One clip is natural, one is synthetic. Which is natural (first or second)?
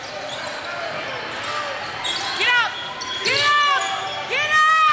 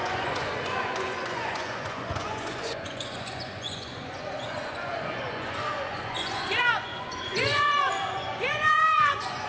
first